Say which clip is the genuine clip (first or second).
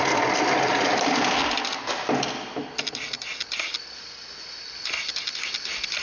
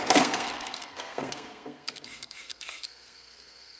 first